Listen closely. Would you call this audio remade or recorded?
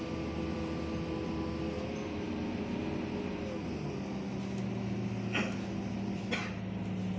recorded